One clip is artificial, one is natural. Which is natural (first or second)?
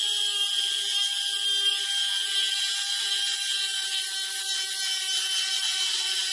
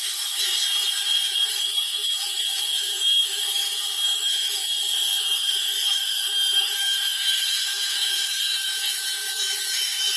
first